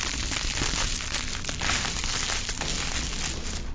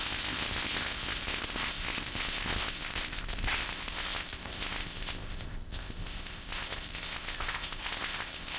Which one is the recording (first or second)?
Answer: first